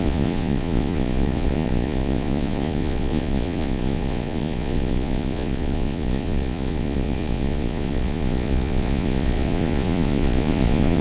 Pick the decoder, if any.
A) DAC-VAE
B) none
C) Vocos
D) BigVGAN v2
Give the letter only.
C